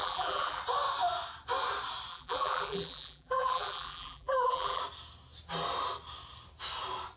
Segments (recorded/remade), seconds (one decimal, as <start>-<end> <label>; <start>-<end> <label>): 0.0-0.6 remade; 0.6-2.1 recorded; 2.1-4.8 remade; 4.8-7.2 recorded